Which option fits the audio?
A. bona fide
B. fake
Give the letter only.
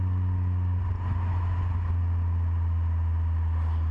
A